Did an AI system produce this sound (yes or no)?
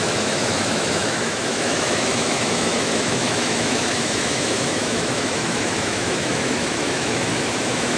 yes